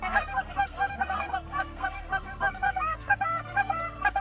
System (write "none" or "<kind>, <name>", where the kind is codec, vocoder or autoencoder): codec, SNAC